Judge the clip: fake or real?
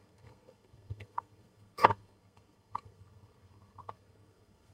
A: fake